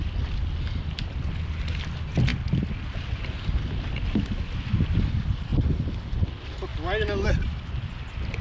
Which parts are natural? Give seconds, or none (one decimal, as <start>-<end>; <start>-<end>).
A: 0.0-8.4